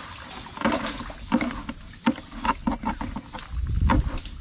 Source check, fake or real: real